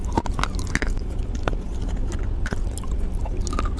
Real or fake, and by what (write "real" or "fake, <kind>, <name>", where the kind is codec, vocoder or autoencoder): real